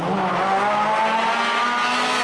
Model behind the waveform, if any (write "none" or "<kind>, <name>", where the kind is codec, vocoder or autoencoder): none